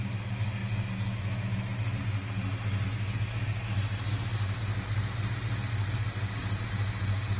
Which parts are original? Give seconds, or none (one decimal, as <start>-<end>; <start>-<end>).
0.0-7.4